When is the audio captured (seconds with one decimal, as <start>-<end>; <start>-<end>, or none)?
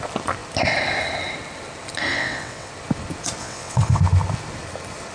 0.0-2.1; 2.7-3.4; 4.0-5.1